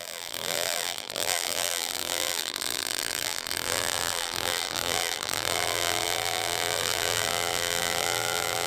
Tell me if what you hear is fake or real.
fake